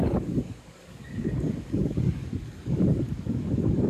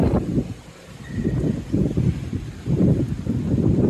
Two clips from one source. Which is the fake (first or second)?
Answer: first